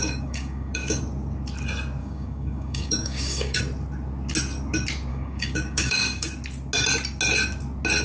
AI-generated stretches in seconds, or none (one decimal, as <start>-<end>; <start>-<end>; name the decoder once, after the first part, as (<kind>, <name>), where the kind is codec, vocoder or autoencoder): 0.0-1.0 (codec, DAC); 2.0-3.6; 5.1-6.3